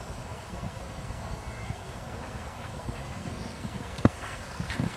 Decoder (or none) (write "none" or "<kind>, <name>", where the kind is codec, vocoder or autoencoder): codec, SNAC